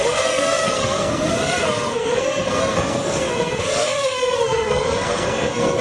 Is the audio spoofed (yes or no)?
yes